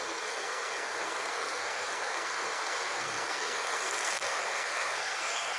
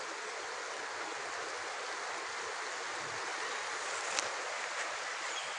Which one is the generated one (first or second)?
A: first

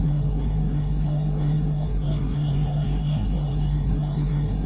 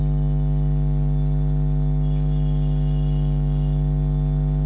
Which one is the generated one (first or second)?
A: first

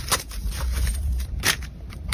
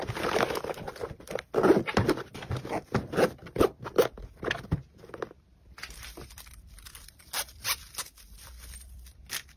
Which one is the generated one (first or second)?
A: first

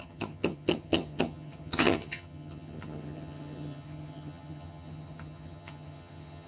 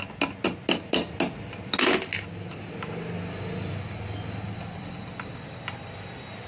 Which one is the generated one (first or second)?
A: first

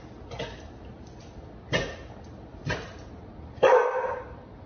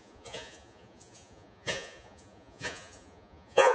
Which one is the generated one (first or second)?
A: second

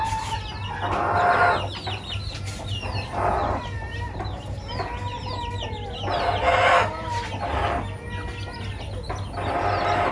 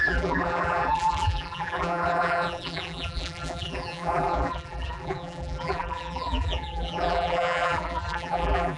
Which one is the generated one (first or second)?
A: second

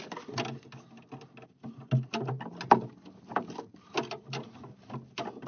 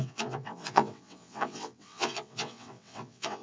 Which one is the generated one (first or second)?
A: second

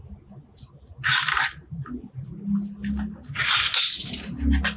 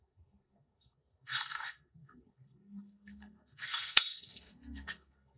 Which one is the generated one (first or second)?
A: second